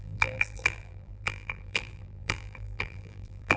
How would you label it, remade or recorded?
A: remade